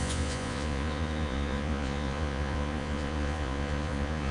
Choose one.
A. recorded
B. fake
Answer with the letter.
B